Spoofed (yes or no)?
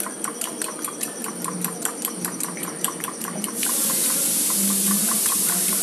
yes